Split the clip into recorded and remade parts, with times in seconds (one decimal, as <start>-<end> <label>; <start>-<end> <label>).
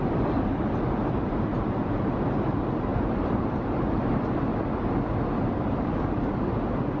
0.0-4.5 remade; 4.5-5.6 recorded; 5.6-7.0 remade